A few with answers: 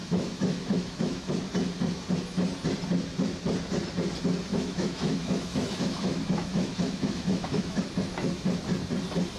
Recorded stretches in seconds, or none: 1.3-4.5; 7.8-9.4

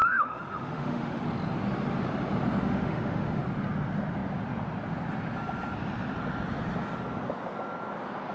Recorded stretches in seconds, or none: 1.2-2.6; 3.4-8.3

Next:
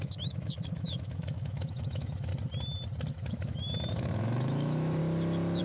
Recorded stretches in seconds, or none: 2.3-3.1; 5.0-5.6

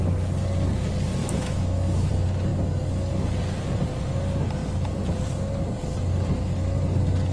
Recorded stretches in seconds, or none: 0.0-1.2; 2.1-7.3

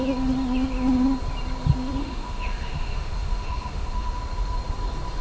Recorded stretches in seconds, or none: 0.0-2.0; 4.2-5.2

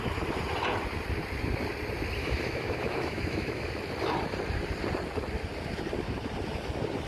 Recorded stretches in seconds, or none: 0.0-2.2; 3.7-7.1